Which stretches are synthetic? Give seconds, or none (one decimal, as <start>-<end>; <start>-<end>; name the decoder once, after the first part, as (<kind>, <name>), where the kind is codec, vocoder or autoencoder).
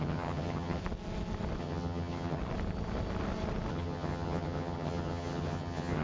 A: 0.0-0.8 (vocoder, HiFi-GAN); 1.6-2.4; 3.7-6.0